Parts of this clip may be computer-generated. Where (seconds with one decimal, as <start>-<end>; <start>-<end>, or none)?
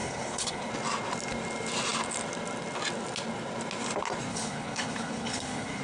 0.0-0.7; 4.3-5.8